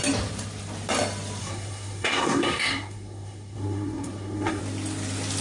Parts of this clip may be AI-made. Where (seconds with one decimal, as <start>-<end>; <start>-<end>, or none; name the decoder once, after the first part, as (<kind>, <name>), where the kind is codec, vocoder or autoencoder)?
1.4-4.6 (codec, SNAC)